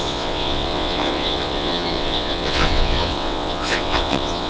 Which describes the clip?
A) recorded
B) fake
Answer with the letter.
B